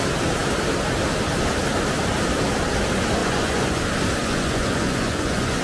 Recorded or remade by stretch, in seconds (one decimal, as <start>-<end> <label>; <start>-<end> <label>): 0.0-3.2 recorded; 3.2-3.8 remade; 3.8-4.2 recorded; 4.2-5.6 remade